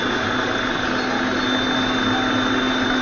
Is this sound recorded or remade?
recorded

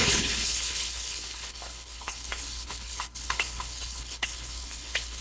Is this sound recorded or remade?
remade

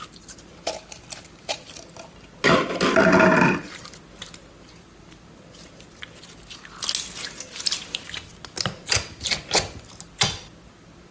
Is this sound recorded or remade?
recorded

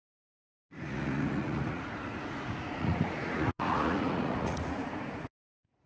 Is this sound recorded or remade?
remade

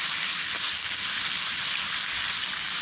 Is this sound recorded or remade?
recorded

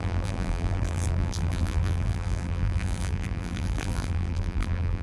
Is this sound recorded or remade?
remade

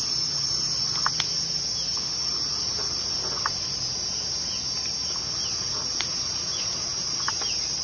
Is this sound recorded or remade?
recorded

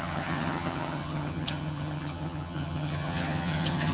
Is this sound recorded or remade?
remade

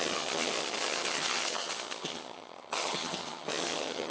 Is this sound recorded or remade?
remade